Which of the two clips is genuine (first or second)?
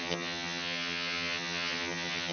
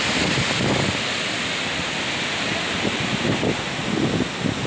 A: second